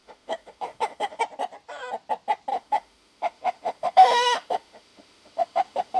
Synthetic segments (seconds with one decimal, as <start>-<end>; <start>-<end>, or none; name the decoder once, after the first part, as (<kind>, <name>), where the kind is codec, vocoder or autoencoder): 0.0-1.2 (autoencoder, DAC-VAE); 2.5-6.0